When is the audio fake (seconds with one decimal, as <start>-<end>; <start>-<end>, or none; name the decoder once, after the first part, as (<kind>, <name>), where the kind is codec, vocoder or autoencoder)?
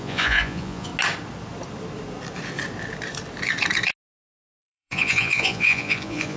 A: 0.0-0.9 (vocoder, Vocos); 4.6-6.4